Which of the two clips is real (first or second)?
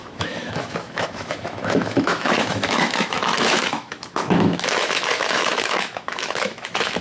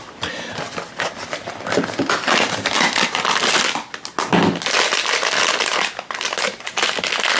second